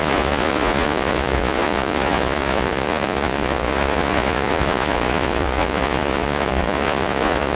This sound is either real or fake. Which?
fake